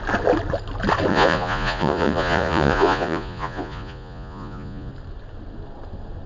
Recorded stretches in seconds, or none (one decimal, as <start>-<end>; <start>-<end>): 0.0-1.1; 4.9-6.3